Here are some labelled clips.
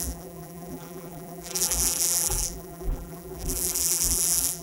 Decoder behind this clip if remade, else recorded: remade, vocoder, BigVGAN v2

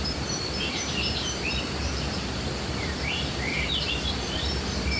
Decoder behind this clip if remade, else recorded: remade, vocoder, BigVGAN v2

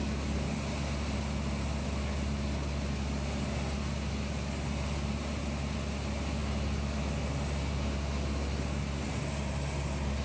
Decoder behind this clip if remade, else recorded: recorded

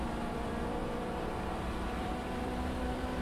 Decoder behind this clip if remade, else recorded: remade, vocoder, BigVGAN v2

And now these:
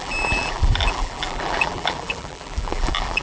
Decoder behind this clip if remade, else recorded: remade, vocoder, BigVGAN v2